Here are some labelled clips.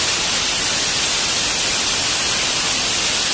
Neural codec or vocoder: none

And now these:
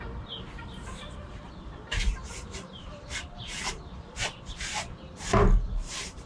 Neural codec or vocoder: vocoder, BigVGAN v2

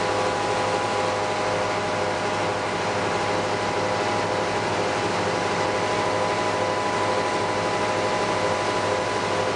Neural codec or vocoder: none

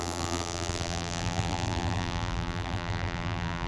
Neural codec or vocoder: vocoder, BigVGAN v2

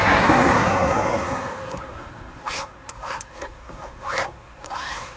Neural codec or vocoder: codec, SNAC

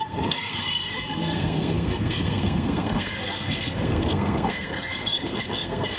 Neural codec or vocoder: codec, SNAC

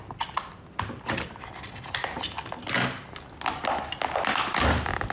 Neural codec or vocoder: none